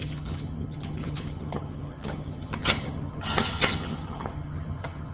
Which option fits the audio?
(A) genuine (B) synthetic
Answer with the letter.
B